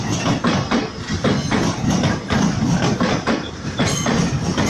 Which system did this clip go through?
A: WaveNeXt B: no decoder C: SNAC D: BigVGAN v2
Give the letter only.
B